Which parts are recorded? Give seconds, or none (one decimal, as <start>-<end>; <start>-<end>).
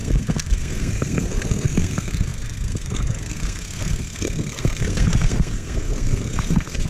none